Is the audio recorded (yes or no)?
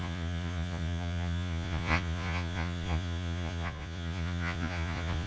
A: no